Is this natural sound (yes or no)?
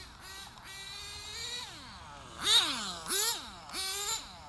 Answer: yes